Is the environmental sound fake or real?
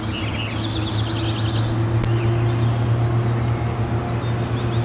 real